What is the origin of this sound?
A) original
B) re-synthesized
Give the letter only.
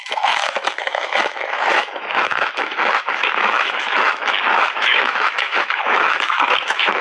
B